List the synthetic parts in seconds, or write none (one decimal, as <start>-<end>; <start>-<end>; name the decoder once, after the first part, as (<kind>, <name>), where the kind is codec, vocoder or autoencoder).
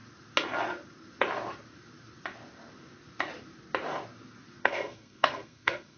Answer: 4.6-6.0 (codec, SNAC)